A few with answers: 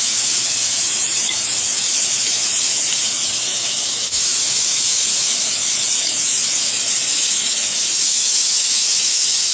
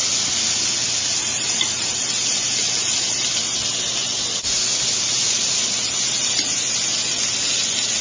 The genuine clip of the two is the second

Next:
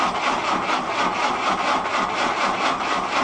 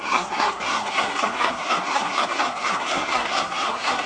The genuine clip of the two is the first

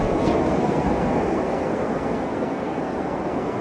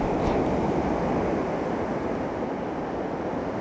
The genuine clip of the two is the second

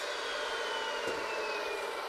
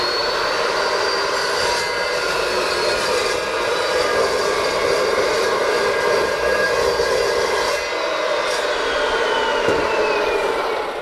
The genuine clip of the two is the first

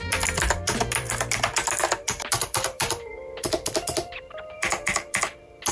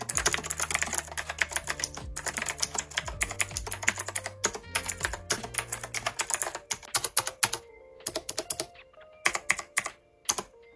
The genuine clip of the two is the second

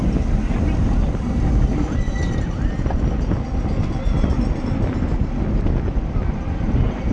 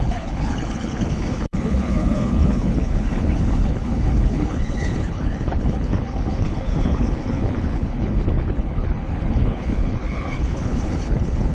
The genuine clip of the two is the first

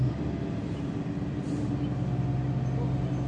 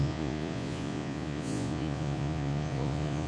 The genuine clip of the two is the first